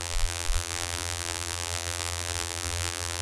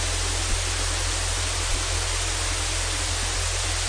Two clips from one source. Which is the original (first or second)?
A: second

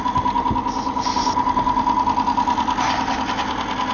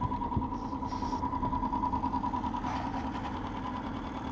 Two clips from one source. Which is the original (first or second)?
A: first